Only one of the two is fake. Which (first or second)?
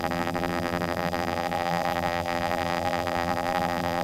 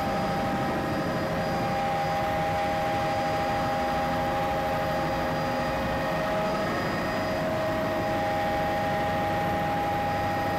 first